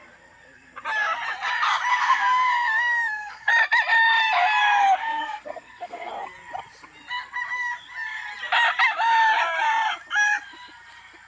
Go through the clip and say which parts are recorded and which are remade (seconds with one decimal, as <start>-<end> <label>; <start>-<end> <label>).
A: 0.0-1.9 recorded; 1.9-3.5 remade; 3.5-4.6 recorded; 4.6-6.1 remade; 6.1-11.3 recorded